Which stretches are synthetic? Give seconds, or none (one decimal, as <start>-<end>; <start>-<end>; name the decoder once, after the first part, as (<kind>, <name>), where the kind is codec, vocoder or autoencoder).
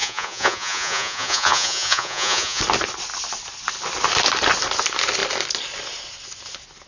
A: 0.0-2.6 (vocoder, Vocos)